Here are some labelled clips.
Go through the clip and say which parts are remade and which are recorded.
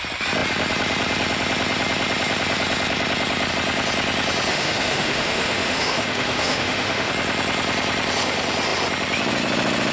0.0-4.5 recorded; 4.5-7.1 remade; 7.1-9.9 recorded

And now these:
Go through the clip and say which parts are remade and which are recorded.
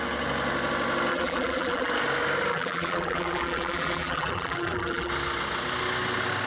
0.0-1.1 recorded; 1.1-1.9 remade; 1.9-2.5 recorded; 2.5-5.1 remade; 5.1-6.5 recorded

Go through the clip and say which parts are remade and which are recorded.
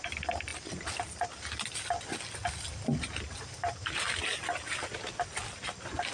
0.0-6.1 recorded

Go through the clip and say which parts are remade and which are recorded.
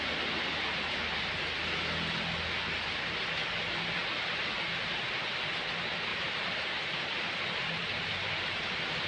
0.0-2.6 recorded; 2.6-3.3 remade; 3.3-6.1 recorded; 6.1-7.2 remade; 7.2-7.8 recorded; 7.8-8.6 remade; 8.6-9.1 recorded